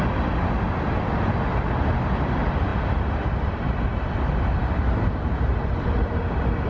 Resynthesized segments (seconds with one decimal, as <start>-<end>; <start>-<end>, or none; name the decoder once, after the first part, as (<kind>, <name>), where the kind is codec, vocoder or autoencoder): none

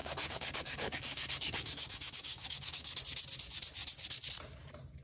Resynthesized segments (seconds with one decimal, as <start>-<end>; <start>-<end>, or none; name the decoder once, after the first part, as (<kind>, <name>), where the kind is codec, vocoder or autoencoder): 0.0-3.0 (codec, DAC)

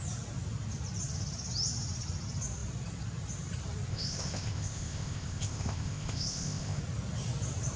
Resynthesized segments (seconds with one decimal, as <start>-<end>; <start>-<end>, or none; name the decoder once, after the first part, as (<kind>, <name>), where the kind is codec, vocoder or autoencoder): 3.9-6.8 (codec, ZipCodec)

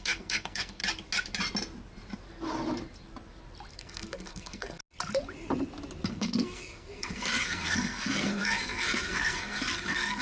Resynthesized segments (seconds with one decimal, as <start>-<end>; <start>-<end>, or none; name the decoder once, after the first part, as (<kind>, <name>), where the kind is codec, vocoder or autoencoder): 0.0-0.8 (codec, SNAC); 3.7-4.8; 6.1-10.2

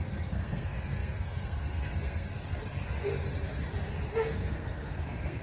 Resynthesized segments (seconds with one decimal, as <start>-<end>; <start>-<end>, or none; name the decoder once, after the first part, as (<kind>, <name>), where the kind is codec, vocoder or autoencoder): 0.0-2.6 (codec, SNAC); 4.1-5.4

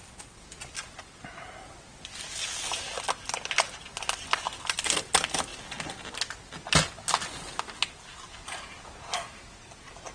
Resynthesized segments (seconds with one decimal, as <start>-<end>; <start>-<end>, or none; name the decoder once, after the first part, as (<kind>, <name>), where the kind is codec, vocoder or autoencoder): none